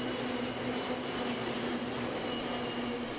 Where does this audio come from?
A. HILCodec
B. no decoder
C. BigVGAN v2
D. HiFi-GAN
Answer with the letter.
B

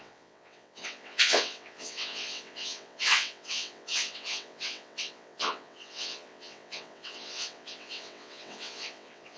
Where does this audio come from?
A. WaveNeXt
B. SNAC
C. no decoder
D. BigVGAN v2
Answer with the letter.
A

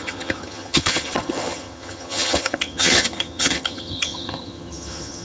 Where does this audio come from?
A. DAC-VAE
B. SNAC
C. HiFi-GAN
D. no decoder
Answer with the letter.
C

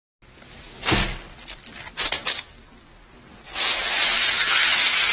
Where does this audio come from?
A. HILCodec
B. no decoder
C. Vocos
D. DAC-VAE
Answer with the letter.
B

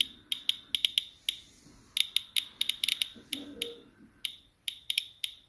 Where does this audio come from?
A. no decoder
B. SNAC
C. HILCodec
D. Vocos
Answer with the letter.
A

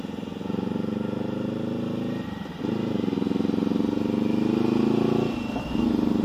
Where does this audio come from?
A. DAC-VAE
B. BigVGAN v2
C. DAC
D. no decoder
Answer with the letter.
D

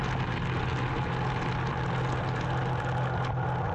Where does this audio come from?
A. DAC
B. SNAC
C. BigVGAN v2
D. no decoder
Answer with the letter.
D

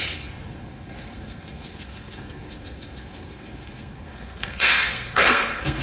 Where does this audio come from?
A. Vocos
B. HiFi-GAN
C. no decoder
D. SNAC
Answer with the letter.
D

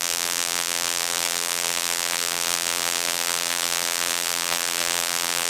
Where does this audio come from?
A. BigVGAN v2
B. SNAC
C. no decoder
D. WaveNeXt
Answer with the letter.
A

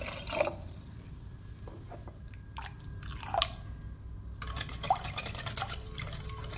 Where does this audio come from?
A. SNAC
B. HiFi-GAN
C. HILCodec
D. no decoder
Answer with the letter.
D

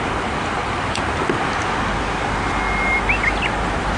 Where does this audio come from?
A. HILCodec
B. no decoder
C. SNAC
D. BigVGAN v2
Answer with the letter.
B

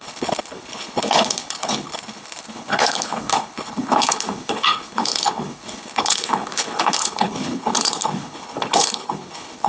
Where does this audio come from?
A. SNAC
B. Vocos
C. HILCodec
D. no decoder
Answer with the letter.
C